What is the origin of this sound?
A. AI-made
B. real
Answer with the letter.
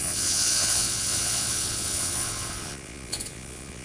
A